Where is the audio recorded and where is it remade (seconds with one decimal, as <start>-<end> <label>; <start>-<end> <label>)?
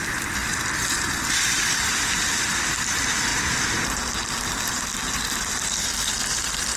0.0-0.4 remade; 0.4-1.7 recorded; 1.7-3.3 remade; 3.3-6.8 recorded